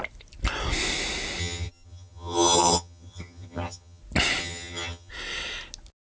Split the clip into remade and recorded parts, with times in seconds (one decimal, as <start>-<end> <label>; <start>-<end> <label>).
0.0-1.4 recorded; 1.4-4.0 remade; 4.0-4.4 recorded; 4.4-5.1 remade; 5.1-6.1 recorded